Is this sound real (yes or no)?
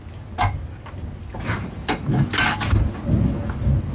yes